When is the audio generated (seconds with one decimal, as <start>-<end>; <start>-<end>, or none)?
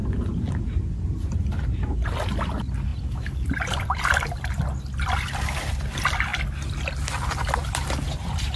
2.9-4.6